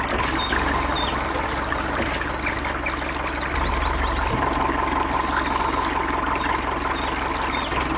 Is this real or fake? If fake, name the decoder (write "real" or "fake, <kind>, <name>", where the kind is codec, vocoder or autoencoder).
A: real